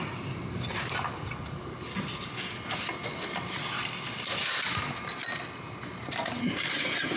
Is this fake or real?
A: real